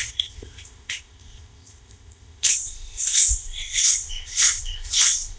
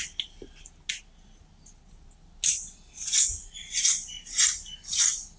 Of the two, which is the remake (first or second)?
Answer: first